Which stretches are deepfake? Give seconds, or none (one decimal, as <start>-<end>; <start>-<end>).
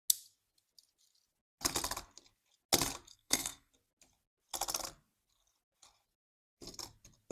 3.1-3.7